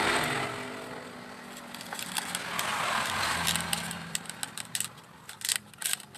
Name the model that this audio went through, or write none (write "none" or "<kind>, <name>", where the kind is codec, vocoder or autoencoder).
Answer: none